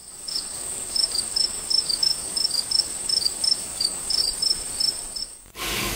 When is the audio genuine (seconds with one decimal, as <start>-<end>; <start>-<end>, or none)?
4.2-5.2